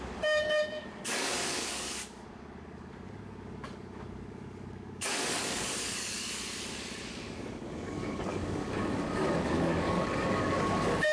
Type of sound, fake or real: fake